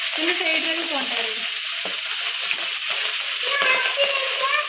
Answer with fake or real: real